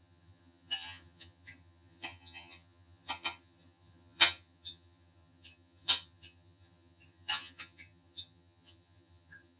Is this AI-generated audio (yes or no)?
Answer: yes